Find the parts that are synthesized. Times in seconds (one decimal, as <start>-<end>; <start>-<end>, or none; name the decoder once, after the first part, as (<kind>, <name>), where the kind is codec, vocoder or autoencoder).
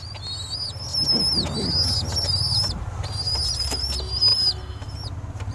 none